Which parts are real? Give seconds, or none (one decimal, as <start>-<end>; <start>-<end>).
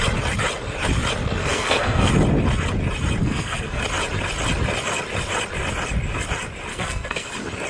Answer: 0.0-1.4; 2.1-3.2; 3.8-6.7; 7.3-7.7